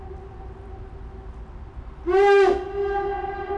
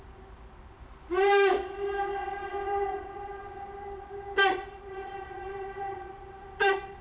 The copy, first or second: second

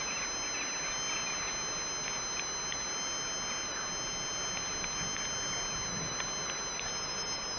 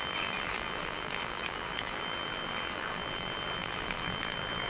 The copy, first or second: second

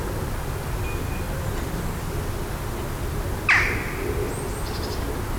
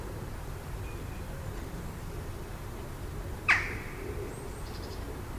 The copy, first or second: second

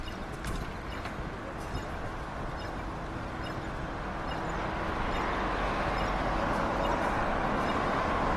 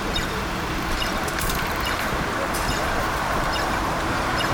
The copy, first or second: second